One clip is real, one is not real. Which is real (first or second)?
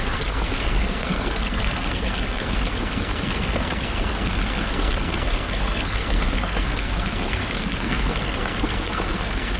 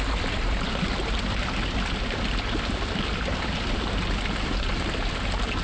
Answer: second